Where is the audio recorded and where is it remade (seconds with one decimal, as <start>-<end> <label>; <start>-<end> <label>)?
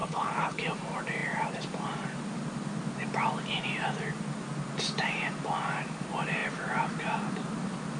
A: 0.0-0.6 remade; 0.6-8.0 recorded